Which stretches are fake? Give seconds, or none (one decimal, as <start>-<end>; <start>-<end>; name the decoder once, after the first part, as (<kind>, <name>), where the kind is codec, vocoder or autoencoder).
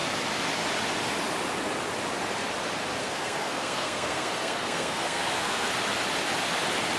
3.0-5.7 (codec, SNAC)